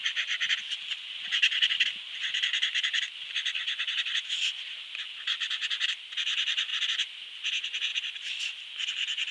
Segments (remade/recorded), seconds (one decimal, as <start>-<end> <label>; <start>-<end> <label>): 0.0-9.3 recorded